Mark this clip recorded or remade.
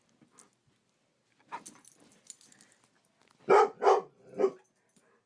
recorded